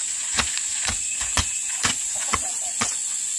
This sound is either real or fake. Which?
fake